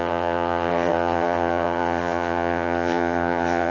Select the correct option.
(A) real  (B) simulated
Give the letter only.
B